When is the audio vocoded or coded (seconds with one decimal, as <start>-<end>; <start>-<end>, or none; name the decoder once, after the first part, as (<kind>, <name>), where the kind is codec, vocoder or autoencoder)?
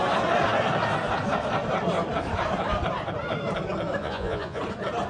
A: 4.0-4.6 (vocoder, Vocos)